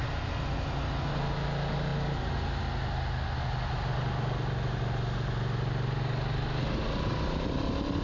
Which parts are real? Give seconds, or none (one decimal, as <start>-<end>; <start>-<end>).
0.0-8.0